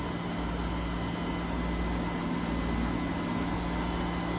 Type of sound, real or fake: real